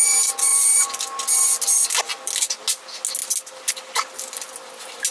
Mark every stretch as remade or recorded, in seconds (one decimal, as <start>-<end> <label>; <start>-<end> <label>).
0.0-5.1 recorded